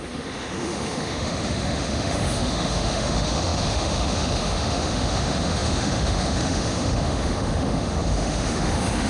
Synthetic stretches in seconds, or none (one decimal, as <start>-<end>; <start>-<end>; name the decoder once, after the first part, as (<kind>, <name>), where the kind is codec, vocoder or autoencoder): 0.0-9.1 (autoencoder, DAC-VAE)